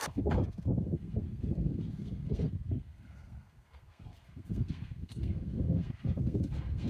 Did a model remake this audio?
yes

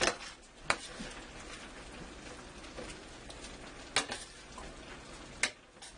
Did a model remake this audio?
no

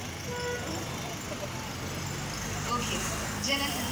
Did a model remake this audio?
no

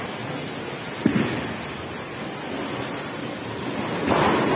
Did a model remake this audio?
no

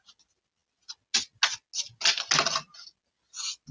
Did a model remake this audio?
no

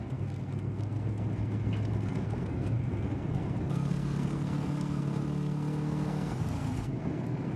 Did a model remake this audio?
yes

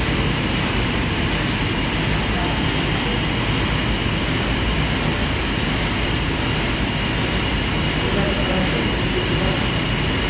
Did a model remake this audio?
no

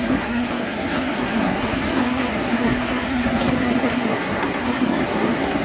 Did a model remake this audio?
yes